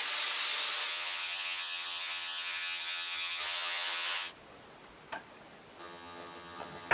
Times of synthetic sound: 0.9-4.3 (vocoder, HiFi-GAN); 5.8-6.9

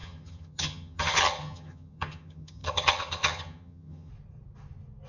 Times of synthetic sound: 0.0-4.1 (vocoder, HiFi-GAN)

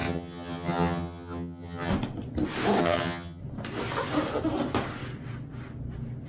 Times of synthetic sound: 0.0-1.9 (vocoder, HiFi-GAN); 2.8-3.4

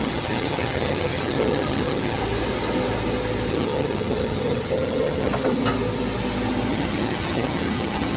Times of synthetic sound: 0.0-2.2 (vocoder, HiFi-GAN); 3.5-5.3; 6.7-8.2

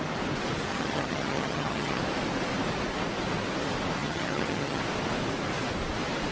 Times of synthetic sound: 0.7-2.0 (vocoder, HiFi-GAN); 4.0-4.8

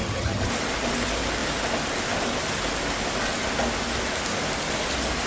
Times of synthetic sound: 0.0-0.5 (vocoder, HiFi-GAN)

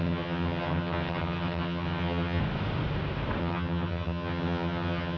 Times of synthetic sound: 0.0-2.4 (vocoder, HiFi-GAN); 3.4-5.2